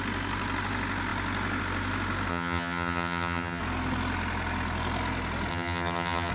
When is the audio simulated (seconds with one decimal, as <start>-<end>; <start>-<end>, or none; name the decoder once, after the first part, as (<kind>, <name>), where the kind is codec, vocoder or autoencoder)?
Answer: 2.3-3.6 (vocoder, HiFi-GAN); 5.5-6.3